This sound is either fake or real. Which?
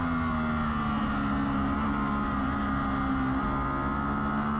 real